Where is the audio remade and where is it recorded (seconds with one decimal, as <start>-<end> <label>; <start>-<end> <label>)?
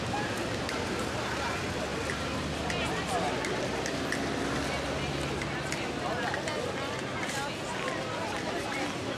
0.0-9.2 recorded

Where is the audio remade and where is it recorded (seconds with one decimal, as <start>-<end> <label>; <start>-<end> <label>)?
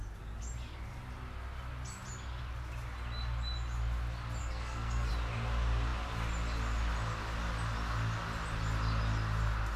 0.0-4.4 recorded; 4.4-5.1 remade; 5.1-9.8 recorded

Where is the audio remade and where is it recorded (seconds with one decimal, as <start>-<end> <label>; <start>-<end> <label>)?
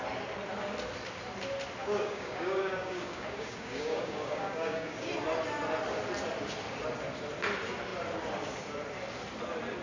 0.0-1.8 recorded; 1.8-5.1 remade; 5.1-9.8 recorded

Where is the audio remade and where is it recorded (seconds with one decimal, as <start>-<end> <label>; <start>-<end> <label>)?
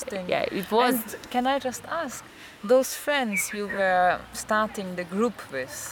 0.0-1.0 recorded; 1.0-1.6 remade; 1.6-2.3 recorded; 2.3-3.8 remade; 3.8-5.9 recorded